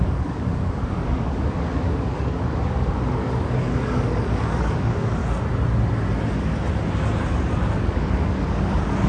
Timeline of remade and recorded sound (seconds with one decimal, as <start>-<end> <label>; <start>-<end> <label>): 0.0-5.2 remade; 5.2-7.8 recorded; 7.8-9.1 remade